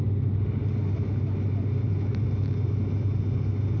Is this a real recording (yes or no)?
yes